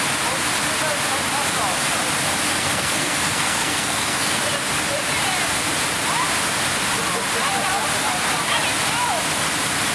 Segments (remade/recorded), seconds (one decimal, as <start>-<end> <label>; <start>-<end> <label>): 0.0-2.5 recorded; 2.5-4.4 remade; 4.4-9.9 recorded